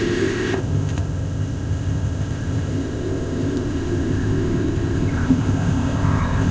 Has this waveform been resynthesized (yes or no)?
yes